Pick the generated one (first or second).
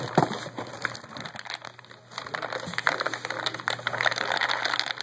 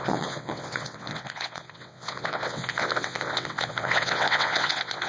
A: second